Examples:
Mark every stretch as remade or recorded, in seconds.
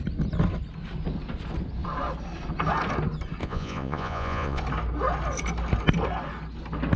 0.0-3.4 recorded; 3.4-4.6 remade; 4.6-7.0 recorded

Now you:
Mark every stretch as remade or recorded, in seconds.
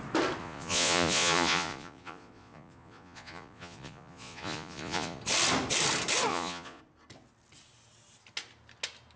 0.0-0.4 recorded; 0.4-5.2 remade; 5.2-6.3 recorded; 6.3-6.8 remade; 6.8-9.2 recorded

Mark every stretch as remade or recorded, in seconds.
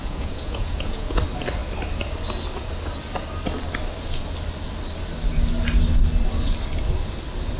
0.0-1.2 remade; 1.2-7.6 recorded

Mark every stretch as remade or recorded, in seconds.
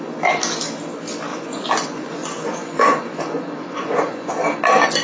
0.0-1.3 recorded; 1.3-4.3 remade; 4.3-5.0 recorded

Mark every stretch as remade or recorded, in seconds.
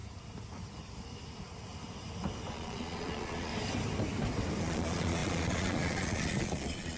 0.0-2.5 recorded; 2.5-3.5 remade; 3.5-4.6 recorded; 4.6-7.0 remade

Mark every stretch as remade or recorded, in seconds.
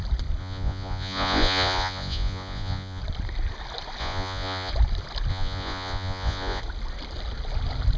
0.0-0.4 recorded; 0.4-3.0 remade; 3.0-4.0 recorded; 4.0-4.7 remade; 4.7-5.3 recorded; 5.3-6.6 remade; 6.6-8.0 recorded